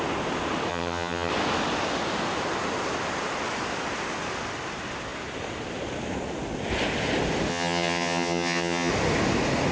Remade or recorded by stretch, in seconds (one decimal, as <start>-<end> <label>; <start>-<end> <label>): 0.0-0.7 recorded; 0.7-1.3 remade; 1.3-7.5 recorded; 7.5-8.9 remade; 8.9-9.7 recorded